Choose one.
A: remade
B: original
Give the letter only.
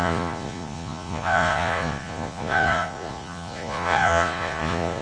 A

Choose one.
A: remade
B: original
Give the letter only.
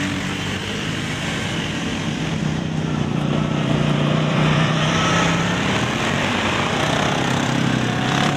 A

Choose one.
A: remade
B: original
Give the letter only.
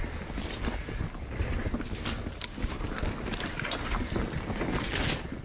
B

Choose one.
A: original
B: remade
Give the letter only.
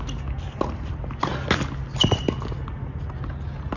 A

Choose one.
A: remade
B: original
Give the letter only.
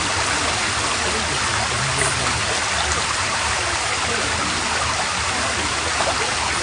B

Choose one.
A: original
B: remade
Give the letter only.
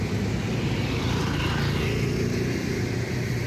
A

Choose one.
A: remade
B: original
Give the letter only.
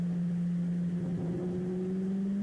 B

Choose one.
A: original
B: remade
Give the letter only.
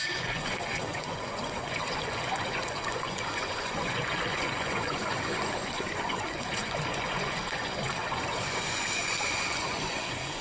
B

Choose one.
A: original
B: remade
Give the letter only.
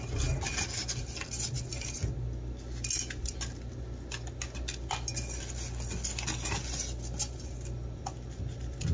A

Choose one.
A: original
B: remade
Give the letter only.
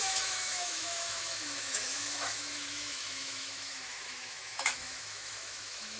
B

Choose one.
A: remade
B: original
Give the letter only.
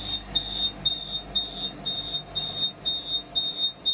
B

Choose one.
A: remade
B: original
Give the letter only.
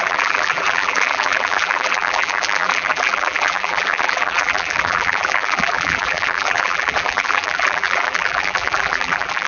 A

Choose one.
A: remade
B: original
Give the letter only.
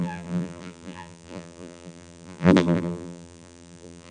A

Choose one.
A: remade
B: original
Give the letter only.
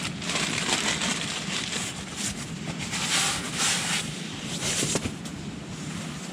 B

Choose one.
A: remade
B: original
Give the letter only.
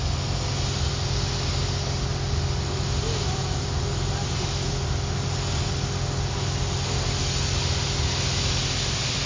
B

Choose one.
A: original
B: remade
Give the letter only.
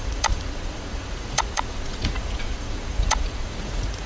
B